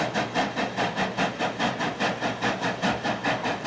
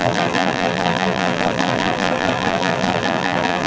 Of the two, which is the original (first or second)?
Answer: first